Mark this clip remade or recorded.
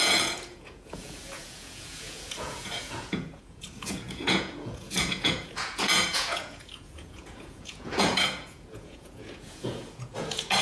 remade